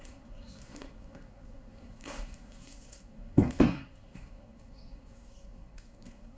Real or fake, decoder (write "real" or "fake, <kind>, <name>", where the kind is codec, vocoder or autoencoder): fake, codec, SNAC